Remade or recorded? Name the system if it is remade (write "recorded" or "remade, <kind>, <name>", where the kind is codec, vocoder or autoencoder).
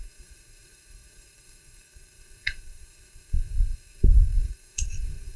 remade, codec, SNAC